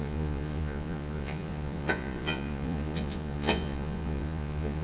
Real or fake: fake